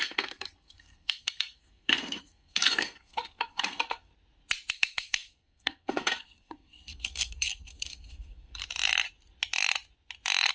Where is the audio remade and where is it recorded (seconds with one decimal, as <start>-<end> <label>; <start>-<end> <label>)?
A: 0.0-4.1 remade; 4.1-4.7 recorded; 4.7-8.6 remade; 8.6-10.5 recorded